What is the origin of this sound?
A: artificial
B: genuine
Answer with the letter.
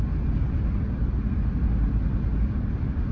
B